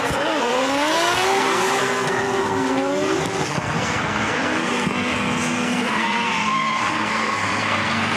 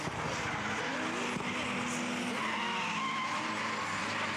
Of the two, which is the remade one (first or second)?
first